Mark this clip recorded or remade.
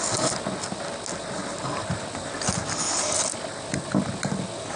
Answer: recorded